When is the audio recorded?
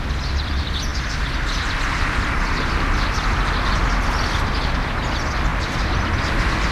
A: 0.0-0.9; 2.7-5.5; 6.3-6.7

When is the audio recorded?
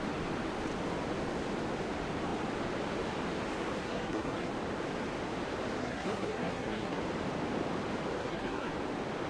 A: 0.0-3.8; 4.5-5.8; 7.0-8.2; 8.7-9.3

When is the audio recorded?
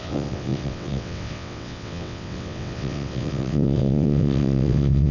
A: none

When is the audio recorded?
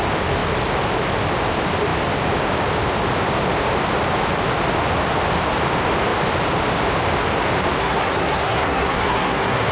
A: 0.0-7.8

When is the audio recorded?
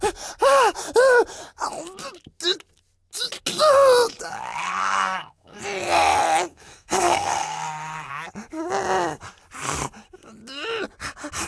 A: 0.0-4.8; 5.6-6.5; 8.1-11.5